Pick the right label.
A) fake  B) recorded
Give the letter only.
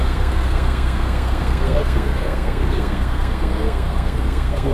A